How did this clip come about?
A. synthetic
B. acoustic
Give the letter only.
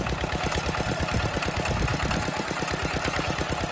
B